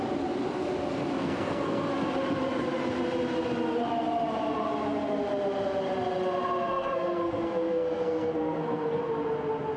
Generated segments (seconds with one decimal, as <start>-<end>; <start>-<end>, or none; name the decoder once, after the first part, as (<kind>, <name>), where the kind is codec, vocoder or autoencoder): 1.2-1.9 (codec, SNAC); 6.7-9.0